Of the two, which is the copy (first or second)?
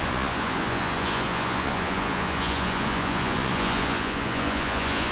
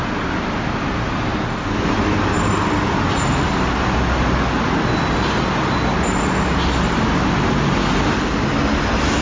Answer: first